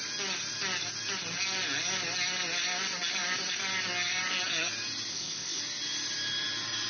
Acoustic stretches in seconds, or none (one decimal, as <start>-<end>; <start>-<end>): 0.0-5.1; 5.6-6.9